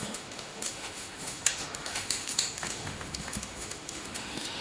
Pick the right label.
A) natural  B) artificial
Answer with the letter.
B